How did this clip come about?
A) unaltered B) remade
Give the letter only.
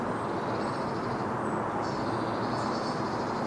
A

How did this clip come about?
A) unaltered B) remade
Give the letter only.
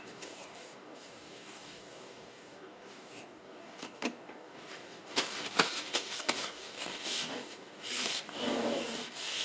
B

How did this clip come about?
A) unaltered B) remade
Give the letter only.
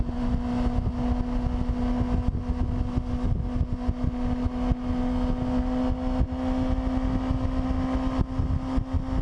A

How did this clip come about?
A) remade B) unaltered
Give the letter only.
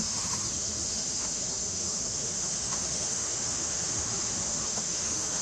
A